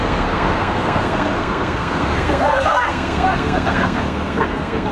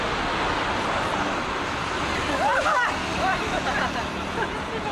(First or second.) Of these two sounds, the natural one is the second